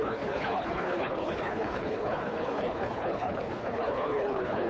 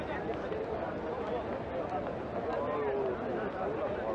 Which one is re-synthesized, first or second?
first